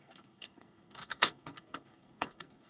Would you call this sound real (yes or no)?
no